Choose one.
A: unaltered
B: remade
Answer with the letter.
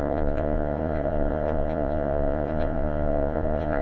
B